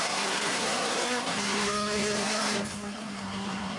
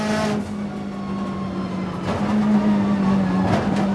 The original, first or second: second